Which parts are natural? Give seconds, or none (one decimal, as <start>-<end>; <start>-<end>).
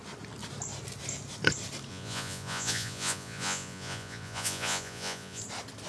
0.0-1.9; 5.4-5.9